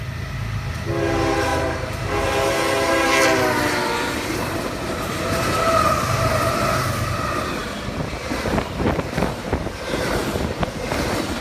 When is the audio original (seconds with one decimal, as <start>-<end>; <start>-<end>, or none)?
0.0-11.4